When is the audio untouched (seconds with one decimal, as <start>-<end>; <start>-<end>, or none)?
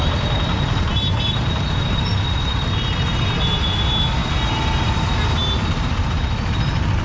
0.0-7.0